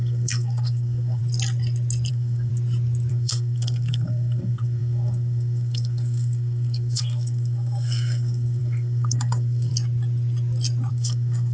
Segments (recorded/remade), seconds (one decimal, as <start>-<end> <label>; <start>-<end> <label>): 0.0-1.2 remade; 1.2-2.1 recorded; 2.1-2.5 remade; 2.5-3.1 recorded; 3.1-9.7 remade; 9.7-10.9 recorded; 10.9-11.5 remade